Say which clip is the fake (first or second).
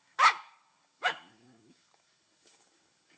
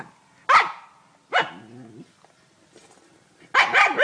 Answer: first